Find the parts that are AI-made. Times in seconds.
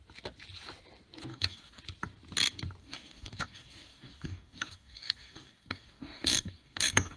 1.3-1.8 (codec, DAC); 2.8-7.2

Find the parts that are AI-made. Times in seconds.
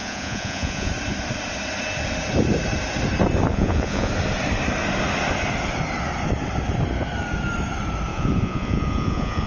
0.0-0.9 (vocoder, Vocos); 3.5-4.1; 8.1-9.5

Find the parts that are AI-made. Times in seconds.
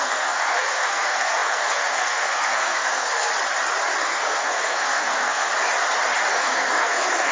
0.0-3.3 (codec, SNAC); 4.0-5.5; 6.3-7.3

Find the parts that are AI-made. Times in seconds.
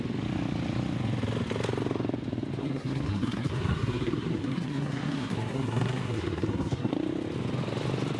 2.6-6.9 (codec, SNAC)